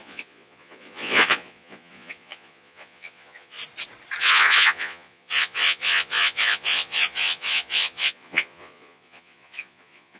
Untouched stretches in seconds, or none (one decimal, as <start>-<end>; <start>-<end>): 3.6-4.2

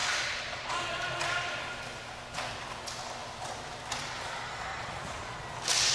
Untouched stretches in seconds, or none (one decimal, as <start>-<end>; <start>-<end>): 0.8-4.7; 5.4-5.9

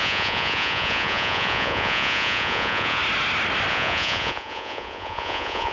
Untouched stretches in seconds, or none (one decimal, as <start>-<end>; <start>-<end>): 3.0-3.7

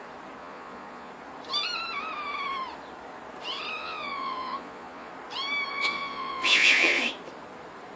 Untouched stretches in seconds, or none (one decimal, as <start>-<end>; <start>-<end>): 0.0-0.4; 1.1-3.8; 5.1-5.7; 7.0-8.0

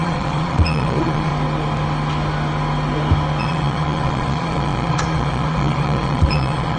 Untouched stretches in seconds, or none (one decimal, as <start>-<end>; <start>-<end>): 1.3-3.4